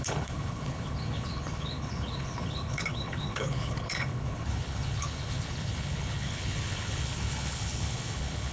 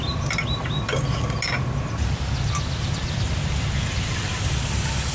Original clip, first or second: second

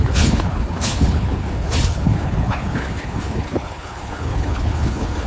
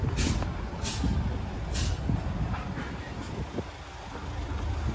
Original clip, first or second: second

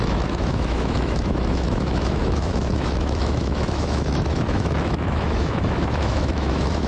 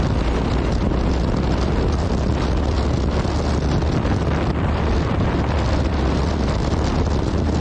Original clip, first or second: second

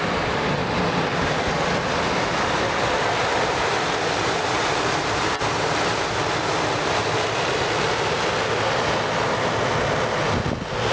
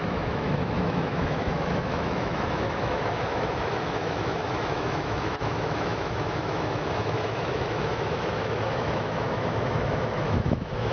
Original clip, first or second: first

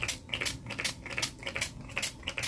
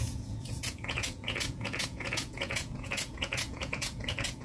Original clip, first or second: first